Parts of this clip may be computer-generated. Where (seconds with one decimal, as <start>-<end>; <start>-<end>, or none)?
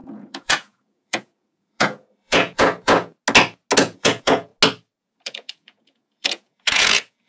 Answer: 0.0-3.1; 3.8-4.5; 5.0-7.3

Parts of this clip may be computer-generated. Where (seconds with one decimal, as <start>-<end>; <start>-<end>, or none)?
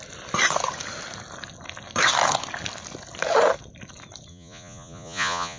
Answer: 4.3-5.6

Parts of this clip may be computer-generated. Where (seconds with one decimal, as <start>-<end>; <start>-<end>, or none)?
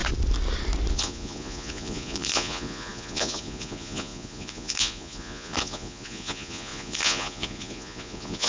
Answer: 0.9-8.5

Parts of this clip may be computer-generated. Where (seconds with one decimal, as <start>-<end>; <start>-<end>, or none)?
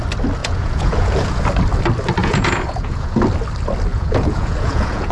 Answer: 0.4-1.4; 2.2-3.2; 3.9-5.1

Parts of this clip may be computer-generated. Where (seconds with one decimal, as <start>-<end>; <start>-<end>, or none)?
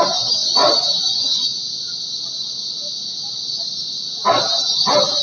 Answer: none